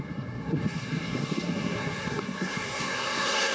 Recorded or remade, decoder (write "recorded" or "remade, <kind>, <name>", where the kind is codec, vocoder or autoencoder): remade, codec, SNAC